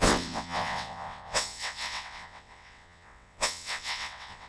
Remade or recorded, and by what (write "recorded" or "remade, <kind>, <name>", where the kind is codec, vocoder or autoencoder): remade, vocoder, WaveNeXt